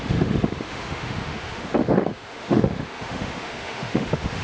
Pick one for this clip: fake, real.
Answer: fake